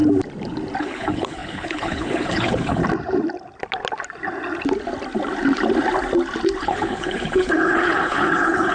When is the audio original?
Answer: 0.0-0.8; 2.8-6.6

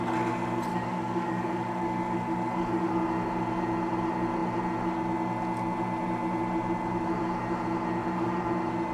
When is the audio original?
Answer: 0.0-0.7; 2.9-8.0; 8.5-8.9

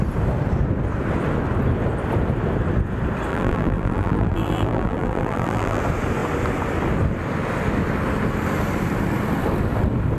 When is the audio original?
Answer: 0.0-3.3; 5.8-10.2

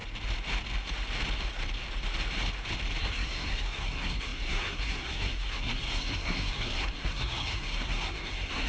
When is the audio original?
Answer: 0.0-3.0

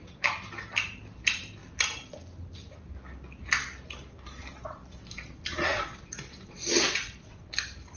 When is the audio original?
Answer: 0.0-5.7; 7.5-8.0

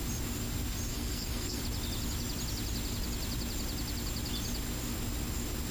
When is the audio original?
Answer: 0.0-0.9; 1.6-5.7

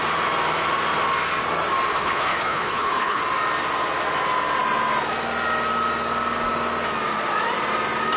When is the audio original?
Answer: 0.0-1.9; 3.2-8.2

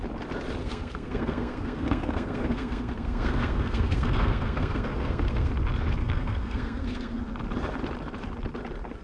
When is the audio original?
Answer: 0.0-0.6; 5.5-6.0; 7.2-9.0